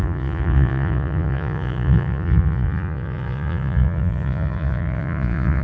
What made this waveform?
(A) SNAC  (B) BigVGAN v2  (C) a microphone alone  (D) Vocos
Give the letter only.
D